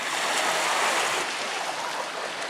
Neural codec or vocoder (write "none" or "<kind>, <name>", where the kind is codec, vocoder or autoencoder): none